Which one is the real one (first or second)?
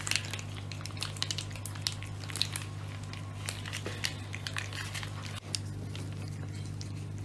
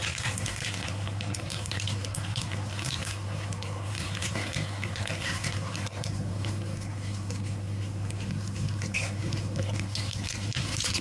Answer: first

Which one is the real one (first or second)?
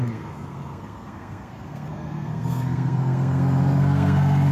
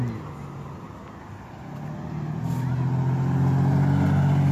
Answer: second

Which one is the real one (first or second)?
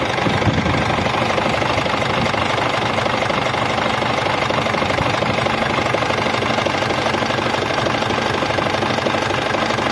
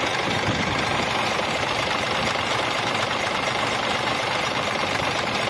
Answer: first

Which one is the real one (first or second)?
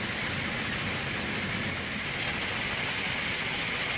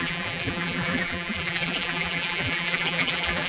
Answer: first